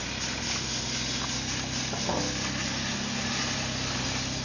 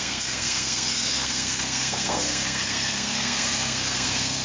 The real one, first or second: first